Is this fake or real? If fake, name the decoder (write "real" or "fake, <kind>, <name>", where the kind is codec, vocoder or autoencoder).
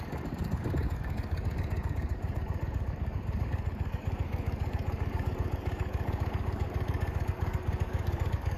fake, codec, DAC